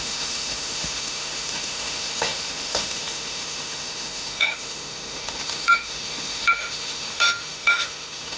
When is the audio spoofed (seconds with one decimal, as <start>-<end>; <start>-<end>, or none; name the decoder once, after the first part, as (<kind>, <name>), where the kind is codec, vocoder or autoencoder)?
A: 0.0-8.4 (autoencoder, DAC-VAE)

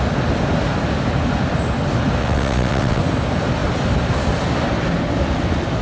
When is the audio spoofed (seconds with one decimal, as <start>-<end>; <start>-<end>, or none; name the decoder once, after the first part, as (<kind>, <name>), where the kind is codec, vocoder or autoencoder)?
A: 2.2-3.0 (vocoder, WaveNeXt)